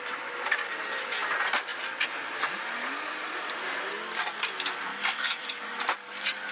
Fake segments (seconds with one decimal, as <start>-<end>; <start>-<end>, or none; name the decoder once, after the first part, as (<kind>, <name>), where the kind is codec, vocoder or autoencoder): none